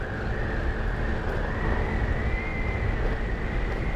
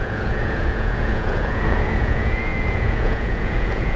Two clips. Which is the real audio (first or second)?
first